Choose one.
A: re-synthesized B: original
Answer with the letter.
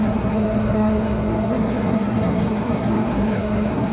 A